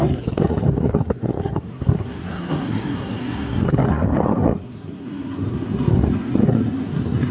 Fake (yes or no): yes